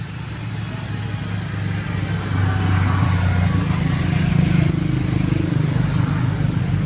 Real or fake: real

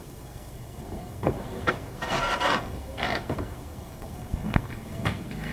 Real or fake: fake